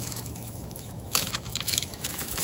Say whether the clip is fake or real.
fake